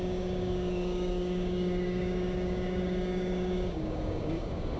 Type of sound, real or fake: fake